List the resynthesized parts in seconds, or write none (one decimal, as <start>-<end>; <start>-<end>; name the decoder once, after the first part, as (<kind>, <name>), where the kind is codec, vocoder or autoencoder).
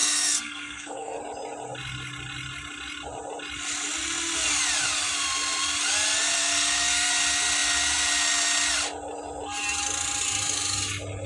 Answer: 0.0-1.2 (codec, SNAC); 6.4-7.1